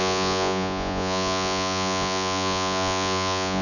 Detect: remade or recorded remade